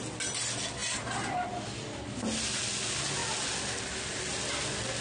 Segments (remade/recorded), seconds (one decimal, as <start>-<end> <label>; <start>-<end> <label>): 0.0-5.0 recorded